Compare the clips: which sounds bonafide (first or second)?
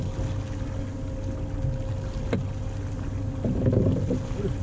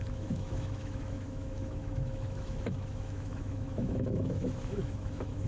first